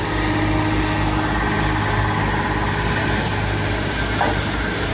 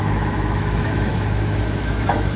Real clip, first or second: first